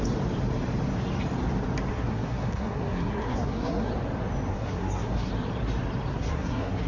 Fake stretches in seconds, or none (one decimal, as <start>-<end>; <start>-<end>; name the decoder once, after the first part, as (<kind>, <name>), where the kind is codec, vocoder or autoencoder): 1.9-3.9 (codec, SNAC); 4.5-5.3; 6.1-6.9